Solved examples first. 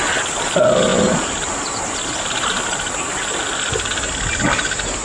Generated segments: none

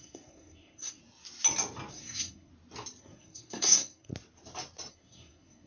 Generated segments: 0.0-1.0; 1.9-2.5; 3.0-4.1; 4.9-5.7

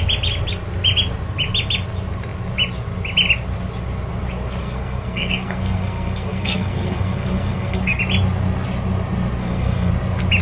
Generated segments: 4.6-8.0; 9.4-9.9

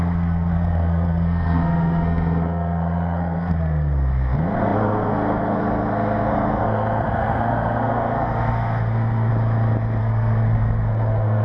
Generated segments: 0.0-9.3; 10.0-11.4